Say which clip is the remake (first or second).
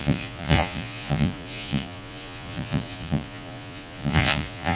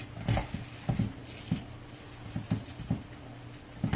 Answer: first